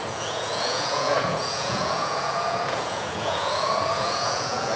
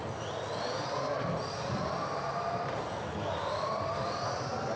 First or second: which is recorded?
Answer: second